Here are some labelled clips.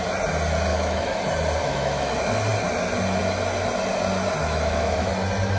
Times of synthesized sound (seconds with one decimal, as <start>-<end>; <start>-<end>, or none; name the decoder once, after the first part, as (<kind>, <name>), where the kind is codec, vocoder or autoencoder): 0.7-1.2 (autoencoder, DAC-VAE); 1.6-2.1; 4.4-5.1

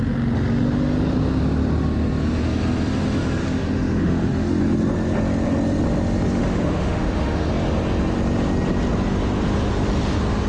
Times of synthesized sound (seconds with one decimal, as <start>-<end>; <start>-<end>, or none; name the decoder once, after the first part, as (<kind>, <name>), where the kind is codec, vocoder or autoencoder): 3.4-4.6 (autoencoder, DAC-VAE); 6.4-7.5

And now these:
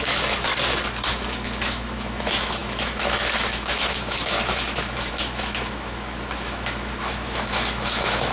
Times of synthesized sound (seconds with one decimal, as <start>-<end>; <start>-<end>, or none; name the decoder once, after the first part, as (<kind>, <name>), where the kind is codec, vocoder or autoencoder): 0.0-0.5 (autoencoder, DAC-VAE); 1.1-8.3

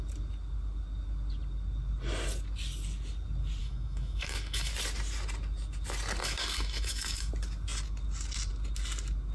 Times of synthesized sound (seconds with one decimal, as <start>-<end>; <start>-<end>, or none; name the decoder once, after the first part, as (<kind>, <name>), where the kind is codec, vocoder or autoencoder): 3.6-4.7 (autoencoder, DAC-VAE); 6.2-7.3

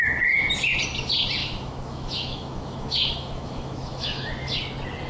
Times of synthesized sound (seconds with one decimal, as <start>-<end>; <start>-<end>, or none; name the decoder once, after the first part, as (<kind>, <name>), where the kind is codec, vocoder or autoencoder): 1.4-4.3 (autoencoder, DAC-VAE)